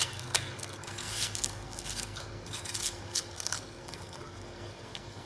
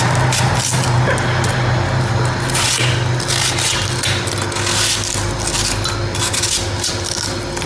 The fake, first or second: first